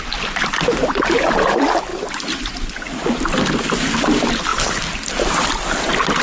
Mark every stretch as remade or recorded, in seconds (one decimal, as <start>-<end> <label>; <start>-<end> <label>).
0.0-6.2 recorded

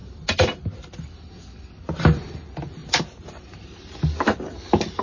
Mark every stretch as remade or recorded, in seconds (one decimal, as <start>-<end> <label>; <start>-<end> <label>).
0.0-1.3 remade; 1.3-2.8 recorded; 2.8-3.3 remade; 3.3-5.0 recorded

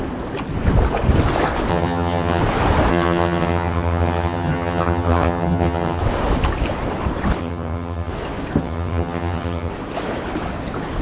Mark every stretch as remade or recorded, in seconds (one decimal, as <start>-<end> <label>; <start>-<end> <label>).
0.0-1.7 recorded; 1.7-2.4 remade; 2.4-2.9 recorded; 2.9-6.0 remade; 6.0-7.4 recorded; 7.4-8.1 remade; 8.1-8.6 recorded; 8.6-9.7 remade; 9.7-11.0 recorded

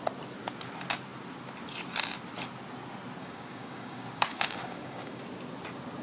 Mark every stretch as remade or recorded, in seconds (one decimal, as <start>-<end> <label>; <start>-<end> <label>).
0.0-3.2 recorded; 3.2-5.2 remade; 5.2-6.0 recorded

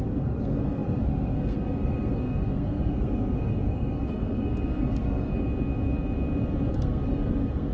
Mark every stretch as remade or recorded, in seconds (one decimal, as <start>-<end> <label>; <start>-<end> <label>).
0.0-5.3 remade; 5.3-6.7 recorded; 6.7-7.7 remade

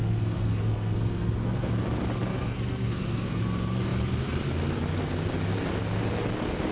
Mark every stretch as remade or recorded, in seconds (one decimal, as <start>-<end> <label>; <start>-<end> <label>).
0.0-1.7 remade; 1.7-2.3 recorded; 2.3-3.4 remade; 3.4-6.7 recorded